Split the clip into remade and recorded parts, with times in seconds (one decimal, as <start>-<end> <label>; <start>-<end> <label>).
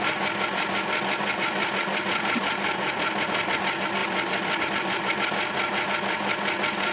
0.0-6.9 recorded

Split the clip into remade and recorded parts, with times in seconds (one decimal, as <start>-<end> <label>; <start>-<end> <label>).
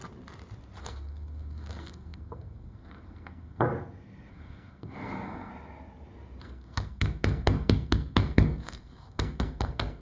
0.0-0.8 recorded; 0.8-3.7 remade; 3.7-4.3 recorded; 4.3-5.5 remade; 5.5-6.4 recorded; 6.4-10.0 remade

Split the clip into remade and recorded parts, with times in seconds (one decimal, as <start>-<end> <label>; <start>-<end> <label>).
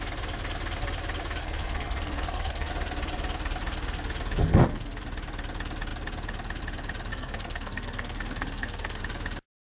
0.0-1.4 recorded; 1.4-2.7 remade; 2.7-4.4 recorded; 4.4-5.0 remade; 5.0-7.1 recorded; 7.1-9.0 remade; 9.0-9.8 recorded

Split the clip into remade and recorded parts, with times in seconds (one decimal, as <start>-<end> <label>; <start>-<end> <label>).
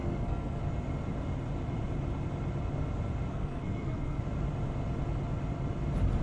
0.0-0.6 remade; 0.6-3.3 recorded; 3.3-4.2 remade; 4.2-6.2 recorded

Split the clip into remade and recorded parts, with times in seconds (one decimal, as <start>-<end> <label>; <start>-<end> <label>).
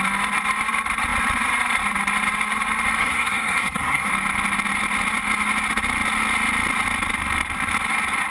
0.0-3.0 recorded; 3.0-4.1 remade; 4.1-8.3 recorded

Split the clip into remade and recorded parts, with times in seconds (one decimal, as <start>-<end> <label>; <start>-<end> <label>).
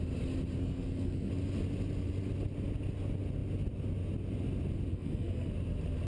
0.0-0.6 recorded; 0.6-1.3 remade; 1.3-4.9 recorded; 4.9-5.5 remade; 5.5-6.1 recorded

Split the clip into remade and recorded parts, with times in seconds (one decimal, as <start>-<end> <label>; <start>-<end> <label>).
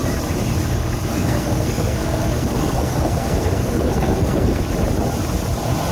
0.0-1.1 recorded; 1.1-4.6 remade; 4.6-5.9 recorded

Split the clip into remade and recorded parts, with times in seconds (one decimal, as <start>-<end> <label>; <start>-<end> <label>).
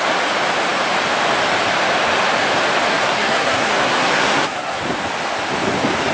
0.0-2.9 recorded; 2.9-4.8 remade; 4.8-6.1 recorded